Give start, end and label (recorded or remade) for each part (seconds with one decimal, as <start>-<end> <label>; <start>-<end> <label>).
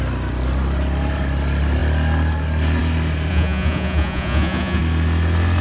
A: 0.0-3.3 recorded; 3.3-4.8 remade; 4.8-5.6 recorded